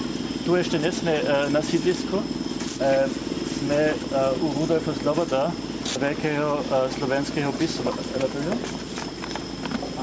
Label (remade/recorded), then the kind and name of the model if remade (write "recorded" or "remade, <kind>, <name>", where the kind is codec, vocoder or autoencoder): recorded